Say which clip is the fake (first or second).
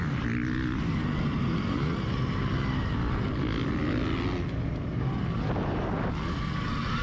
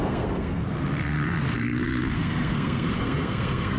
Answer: second